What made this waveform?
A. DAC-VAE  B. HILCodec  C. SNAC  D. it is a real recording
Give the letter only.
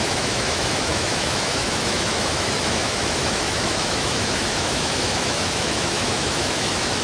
A